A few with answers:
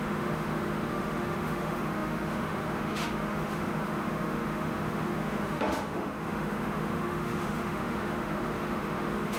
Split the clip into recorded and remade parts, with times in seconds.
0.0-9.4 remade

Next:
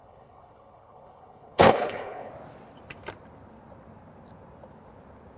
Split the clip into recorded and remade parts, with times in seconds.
0.0-2.3 remade; 2.3-5.4 recorded

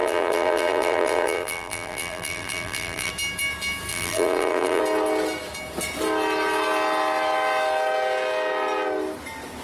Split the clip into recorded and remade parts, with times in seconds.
0.0-3.1 remade; 3.1-3.9 recorded; 3.9-4.8 remade; 4.8-9.6 recorded

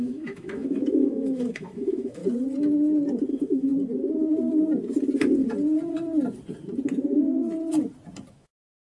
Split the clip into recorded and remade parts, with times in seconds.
0.0-2.2 remade; 2.2-3.3 recorded; 3.3-3.7 remade; 3.7-8.3 recorded; 8.3-9.0 remade

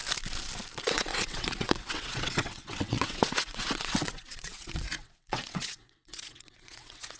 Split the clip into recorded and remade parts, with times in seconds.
0.0-0.9 recorded; 0.9-7.2 remade